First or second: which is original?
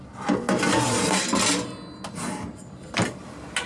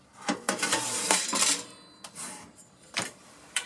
first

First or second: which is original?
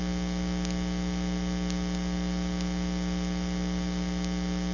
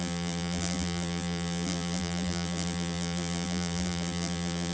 first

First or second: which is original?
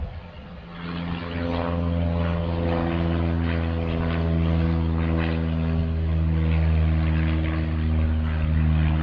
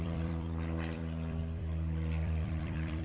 first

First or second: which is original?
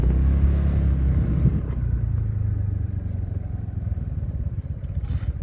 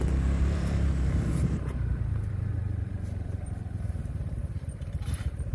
first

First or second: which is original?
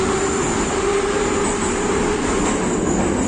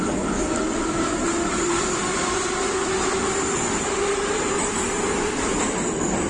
first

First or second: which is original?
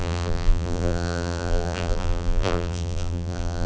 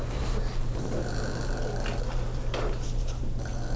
second